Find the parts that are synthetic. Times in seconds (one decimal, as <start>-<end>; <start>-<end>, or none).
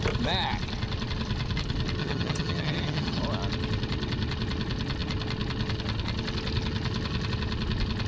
2.0-3.2